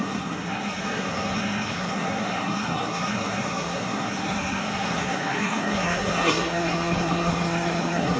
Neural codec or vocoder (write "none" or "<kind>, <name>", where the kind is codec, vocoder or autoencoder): codec, SNAC